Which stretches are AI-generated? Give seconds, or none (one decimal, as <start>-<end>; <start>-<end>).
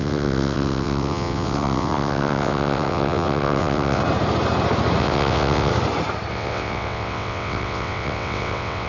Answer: 0.0-4.0; 5.0-5.7; 6.3-8.9